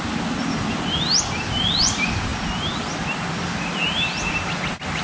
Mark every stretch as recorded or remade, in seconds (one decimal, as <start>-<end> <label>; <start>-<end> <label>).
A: 0.0-5.0 recorded